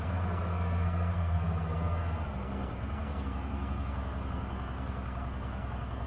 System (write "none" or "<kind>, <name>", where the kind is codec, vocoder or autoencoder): codec, SNAC